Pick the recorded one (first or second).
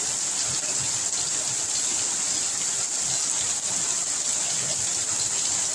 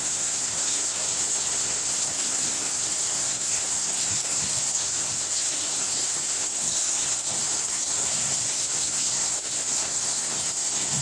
first